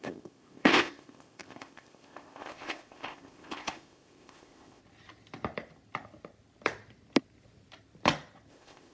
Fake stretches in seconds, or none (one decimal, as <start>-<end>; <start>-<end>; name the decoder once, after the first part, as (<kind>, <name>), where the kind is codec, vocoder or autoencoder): 0.0-4.8 (codec, ZipCodec); 8.5-8.9